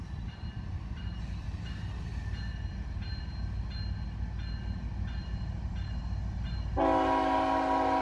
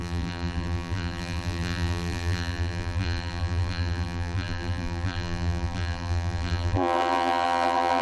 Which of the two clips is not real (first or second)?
second